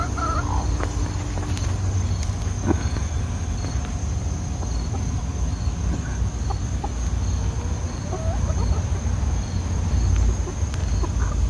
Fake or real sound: real